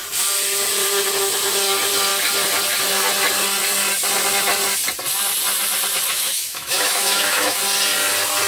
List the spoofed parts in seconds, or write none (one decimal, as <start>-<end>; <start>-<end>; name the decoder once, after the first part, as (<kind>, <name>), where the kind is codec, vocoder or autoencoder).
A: 6.1-7.6 (autoencoder, DAC-VAE)